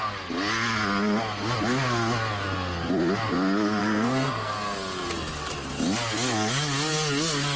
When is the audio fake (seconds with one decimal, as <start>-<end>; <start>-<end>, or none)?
3.8-4.5